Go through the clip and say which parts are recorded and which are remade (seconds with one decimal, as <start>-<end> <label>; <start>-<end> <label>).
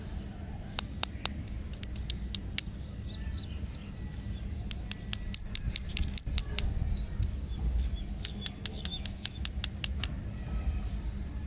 0.0-8.9 recorded; 8.9-9.5 remade; 9.5-11.5 recorded